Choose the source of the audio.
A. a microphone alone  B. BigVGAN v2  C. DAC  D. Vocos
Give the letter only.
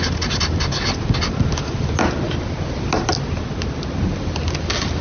A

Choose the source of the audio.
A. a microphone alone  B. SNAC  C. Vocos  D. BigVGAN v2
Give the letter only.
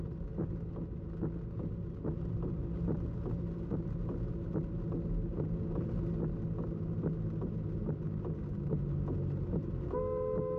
A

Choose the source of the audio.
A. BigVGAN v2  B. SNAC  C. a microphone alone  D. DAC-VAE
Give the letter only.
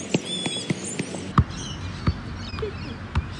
C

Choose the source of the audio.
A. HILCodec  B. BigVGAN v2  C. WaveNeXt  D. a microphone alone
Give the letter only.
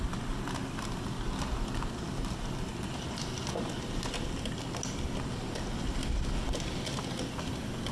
D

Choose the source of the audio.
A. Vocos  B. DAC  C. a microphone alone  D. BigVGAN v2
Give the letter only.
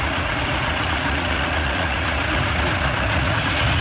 A